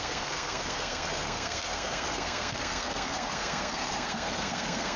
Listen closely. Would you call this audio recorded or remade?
remade